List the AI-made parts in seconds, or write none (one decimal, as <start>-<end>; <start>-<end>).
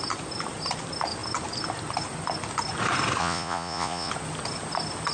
3.2-4.1